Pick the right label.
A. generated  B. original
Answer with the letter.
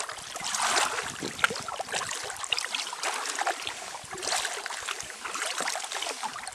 B